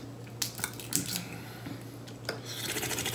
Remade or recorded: recorded